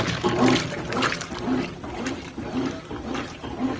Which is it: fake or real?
real